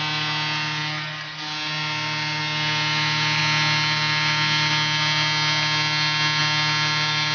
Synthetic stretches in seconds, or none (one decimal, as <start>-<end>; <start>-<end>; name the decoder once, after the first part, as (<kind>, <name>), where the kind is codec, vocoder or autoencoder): none